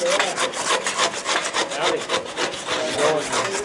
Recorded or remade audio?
recorded